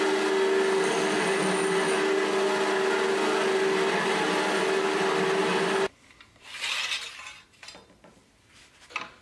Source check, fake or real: real